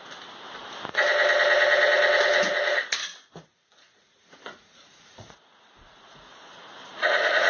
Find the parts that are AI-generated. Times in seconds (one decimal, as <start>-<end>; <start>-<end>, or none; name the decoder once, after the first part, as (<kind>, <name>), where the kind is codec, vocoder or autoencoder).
3.0-7.5 (vocoder, Vocos)